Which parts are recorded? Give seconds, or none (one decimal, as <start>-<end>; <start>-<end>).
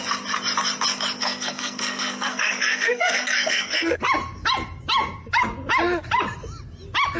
0.0-1.2; 4.0-7.2